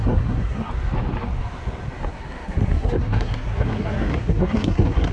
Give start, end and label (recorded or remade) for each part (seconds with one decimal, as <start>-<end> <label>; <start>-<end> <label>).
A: 0.0-0.7 remade; 0.7-2.1 recorded; 2.1-5.1 remade